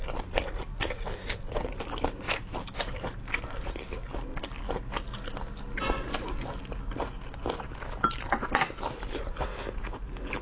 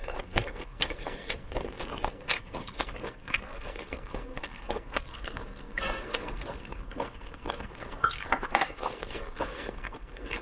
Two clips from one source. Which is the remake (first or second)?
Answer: second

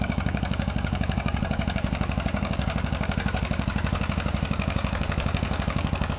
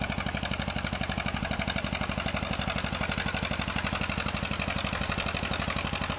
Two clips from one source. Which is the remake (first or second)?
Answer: first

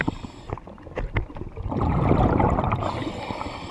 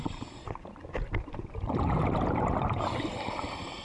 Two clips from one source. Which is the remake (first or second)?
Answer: second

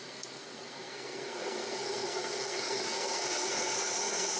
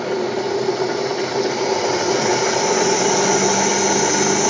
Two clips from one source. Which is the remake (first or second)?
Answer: first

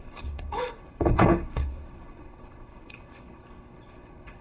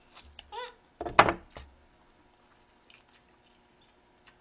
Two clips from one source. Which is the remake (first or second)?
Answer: first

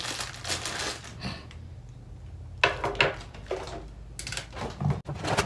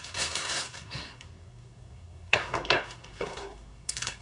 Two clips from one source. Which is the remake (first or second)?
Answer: second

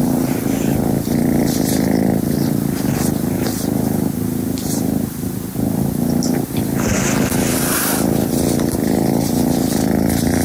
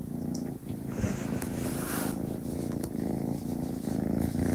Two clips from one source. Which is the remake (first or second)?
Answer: second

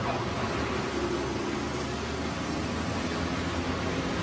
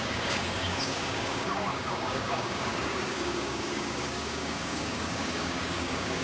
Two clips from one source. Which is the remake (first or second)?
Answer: second